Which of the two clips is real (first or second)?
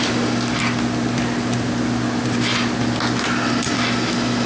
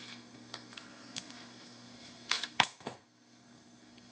first